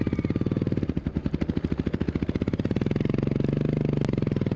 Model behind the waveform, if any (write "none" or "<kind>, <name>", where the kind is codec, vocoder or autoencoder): none